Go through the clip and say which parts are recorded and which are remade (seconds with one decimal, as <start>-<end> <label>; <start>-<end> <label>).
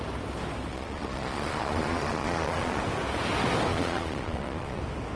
0.0-0.7 recorded; 0.7-2.8 remade; 2.8-3.7 recorded; 3.7-4.8 remade; 4.8-5.2 recorded